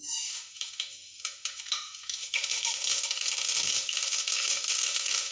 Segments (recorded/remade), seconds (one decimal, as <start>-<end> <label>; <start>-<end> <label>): 0.0-5.3 remade